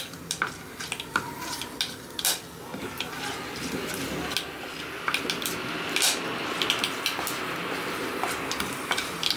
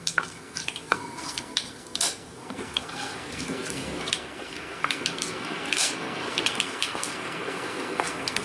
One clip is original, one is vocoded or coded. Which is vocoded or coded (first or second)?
second